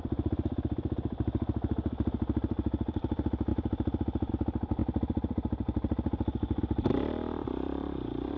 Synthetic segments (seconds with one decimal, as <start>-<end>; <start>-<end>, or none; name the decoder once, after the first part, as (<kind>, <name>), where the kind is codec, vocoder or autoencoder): 0.0-8.4 (vocoder, BigVGAN v2)